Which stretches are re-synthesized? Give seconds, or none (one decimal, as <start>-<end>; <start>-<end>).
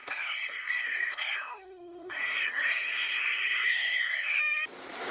0.0-4.4